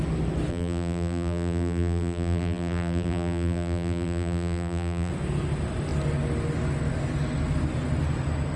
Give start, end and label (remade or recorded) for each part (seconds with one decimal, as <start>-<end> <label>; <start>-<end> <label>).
0.0-0.5 recorded; 0.5-5.1 remade; 5.1-8.6 recorded